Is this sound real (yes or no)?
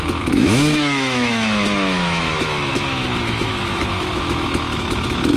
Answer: no